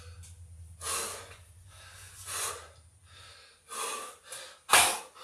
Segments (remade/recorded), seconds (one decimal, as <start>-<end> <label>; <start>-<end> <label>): 0.0-1.1 recorded; 1.1-2.5 remade; 2.5-5.2 recorded